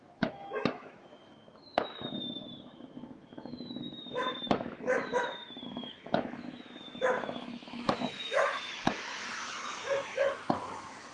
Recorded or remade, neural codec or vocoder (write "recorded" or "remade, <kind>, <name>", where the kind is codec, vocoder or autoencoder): remade, autoencoder, DAC-VAE